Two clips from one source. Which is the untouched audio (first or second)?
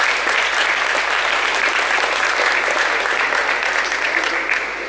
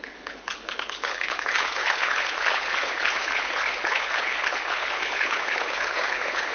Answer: first